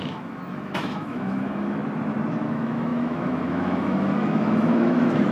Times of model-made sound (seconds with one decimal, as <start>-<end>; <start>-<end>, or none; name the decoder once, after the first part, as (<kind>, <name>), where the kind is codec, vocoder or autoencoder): 0.0-1.8 (autoencoder, DAC-VAE); 2.5-5.3